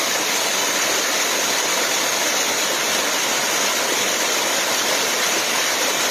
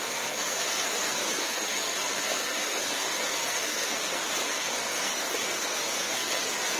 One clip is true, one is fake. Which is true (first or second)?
first